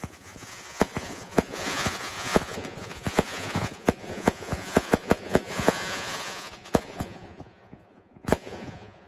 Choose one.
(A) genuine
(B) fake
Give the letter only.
B